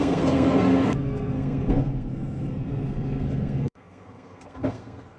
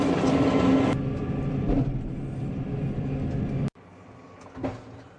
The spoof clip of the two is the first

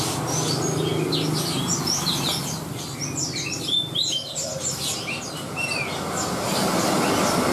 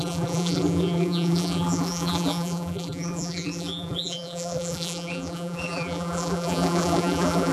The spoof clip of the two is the second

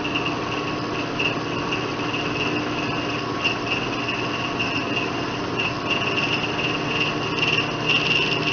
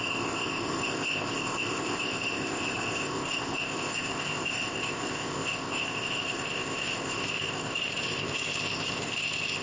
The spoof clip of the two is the second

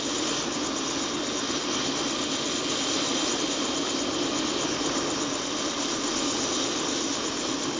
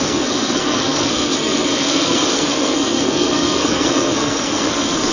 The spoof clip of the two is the second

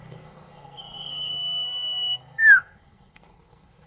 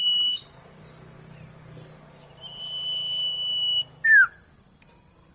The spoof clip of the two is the first